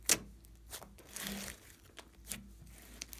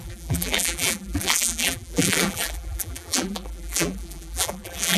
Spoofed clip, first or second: second